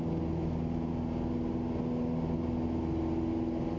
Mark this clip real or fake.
real